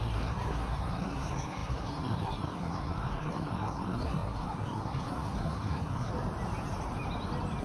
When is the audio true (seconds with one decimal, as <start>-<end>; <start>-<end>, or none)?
6.1-7.6